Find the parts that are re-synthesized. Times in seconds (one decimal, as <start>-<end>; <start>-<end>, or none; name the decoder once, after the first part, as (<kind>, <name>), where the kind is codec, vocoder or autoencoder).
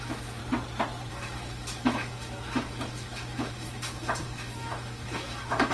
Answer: 0.0-0.4 (autoencoder, DAC-VAE); 1.1-5.7